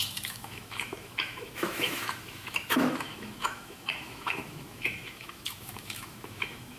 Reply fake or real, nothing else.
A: fake